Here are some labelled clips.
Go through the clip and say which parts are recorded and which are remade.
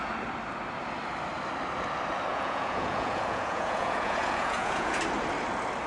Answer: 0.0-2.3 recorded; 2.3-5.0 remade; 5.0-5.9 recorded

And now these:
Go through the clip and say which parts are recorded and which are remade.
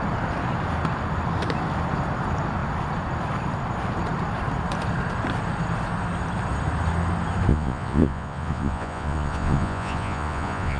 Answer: 0.0-7.5 recorded; 7.5-10.8 remade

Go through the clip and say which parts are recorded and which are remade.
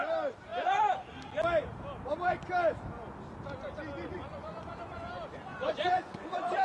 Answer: 0.0-4.0 recorded; 4.0-5.1 remade; 5.1-5.5 recorded; 5.5-6.6 remade